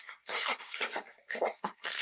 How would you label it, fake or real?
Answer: fake